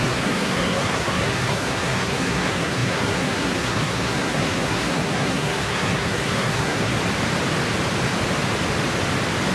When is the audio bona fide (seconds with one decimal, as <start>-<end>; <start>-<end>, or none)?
6.9-9.5